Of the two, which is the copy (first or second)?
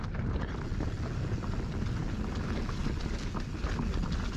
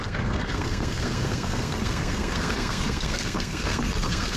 second